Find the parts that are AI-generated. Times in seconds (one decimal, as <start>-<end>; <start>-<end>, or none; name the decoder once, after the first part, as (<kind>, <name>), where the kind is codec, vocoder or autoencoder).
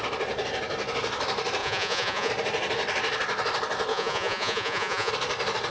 1.6-2.3 (vocoder, Vocos); 3.9-5.1